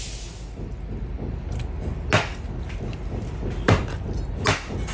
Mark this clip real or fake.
real